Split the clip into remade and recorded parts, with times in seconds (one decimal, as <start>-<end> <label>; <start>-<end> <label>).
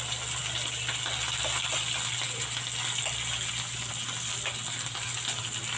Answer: 0.0-5.8 recorded